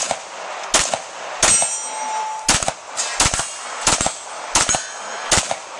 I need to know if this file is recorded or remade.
recorded